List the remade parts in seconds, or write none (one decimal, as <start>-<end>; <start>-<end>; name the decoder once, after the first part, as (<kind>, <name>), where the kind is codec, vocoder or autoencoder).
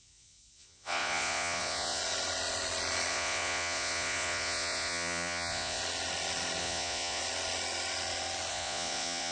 0.0-2.0 (vocoder, Vocos); 3.1-5.8; 6.6-7.2; 8.5-9.3